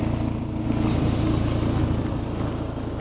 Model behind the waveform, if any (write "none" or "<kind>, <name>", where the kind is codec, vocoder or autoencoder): none